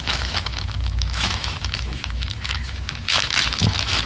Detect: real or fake fake